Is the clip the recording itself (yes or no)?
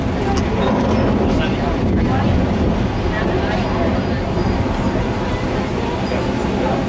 yes